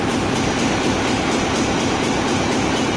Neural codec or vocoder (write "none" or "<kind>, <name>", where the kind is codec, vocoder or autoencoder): none